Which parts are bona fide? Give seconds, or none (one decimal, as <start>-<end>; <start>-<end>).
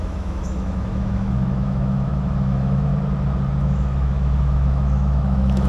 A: 2.9-3.6